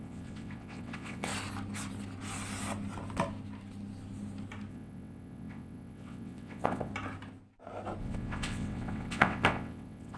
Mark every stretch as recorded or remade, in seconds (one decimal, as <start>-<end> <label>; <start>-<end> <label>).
0.0-1.3 remade; 1.3-4.7 recorded; 4.7-6.9 remade; 6.9-8.0 recorded; 8.0-10.2 remade